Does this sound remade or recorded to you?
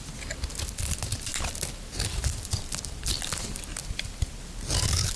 recorded